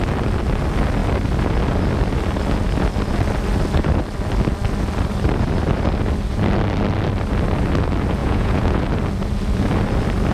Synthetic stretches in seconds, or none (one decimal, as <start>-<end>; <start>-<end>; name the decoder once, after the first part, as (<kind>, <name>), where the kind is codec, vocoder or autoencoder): 8.2-8.8 (vocoder, Vocos)